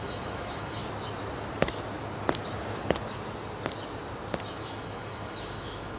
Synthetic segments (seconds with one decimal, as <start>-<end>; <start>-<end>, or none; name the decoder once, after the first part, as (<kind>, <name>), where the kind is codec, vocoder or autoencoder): 0.0-0.8 (autoencoder, DAC-VAE); 4.4-6.0